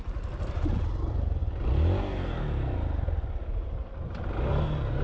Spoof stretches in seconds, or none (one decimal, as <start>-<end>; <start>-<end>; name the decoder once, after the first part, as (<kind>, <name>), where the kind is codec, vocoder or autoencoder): none